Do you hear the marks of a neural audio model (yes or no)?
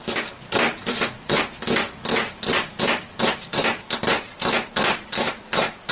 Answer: yes